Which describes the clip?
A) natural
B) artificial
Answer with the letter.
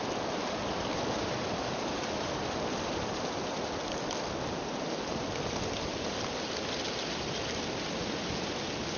A